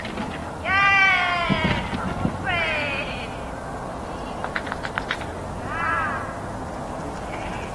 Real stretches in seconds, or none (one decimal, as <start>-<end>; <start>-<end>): 0.0-3.9; 4.5-7.7